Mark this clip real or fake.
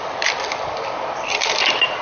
real